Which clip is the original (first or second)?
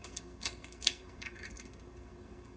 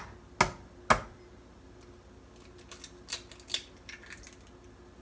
second